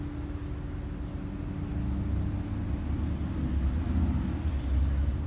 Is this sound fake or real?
real